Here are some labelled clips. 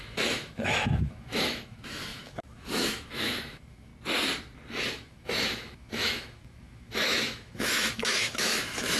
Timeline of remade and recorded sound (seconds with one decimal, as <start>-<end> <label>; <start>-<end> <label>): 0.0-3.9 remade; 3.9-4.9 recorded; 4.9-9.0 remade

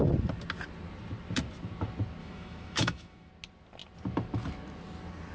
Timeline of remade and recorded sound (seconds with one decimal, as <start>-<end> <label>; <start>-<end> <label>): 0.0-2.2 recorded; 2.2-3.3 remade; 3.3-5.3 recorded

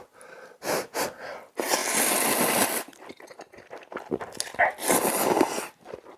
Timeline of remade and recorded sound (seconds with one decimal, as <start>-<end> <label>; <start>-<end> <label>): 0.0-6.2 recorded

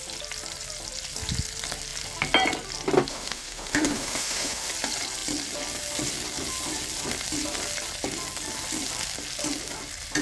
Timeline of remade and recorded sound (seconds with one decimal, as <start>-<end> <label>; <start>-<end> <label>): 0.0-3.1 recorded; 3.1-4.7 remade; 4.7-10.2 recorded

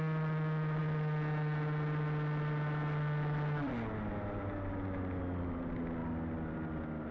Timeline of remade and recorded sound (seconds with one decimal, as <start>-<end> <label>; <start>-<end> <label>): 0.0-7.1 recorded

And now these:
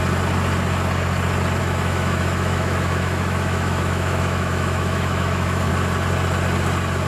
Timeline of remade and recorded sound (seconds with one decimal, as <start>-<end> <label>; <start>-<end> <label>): 0.0-1.6 recorded; 1.6-5.7 remade; 5.7-7.1 recorded

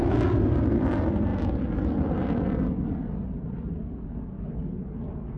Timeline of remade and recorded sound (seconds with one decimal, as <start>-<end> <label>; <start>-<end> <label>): 0.0-5.4 recorded